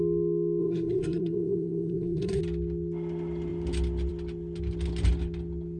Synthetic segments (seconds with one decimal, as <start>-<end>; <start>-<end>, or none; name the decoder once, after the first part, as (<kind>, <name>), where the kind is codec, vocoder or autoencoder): 0.6-2.4 (codec, SNAC)